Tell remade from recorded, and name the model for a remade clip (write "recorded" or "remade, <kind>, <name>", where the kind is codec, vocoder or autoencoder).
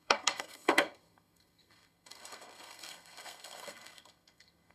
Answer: remade, codec, SNAC